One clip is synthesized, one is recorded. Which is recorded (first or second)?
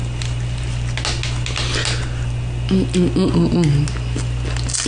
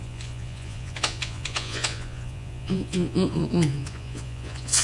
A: first